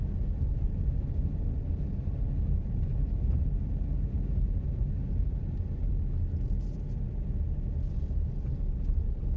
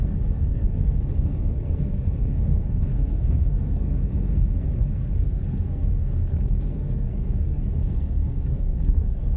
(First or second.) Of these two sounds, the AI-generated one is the second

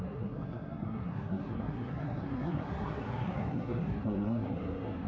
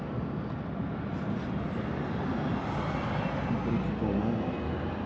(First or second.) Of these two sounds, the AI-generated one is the first